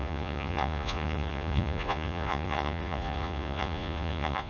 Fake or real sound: fake